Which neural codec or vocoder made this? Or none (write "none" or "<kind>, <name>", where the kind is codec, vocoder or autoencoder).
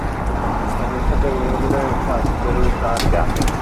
none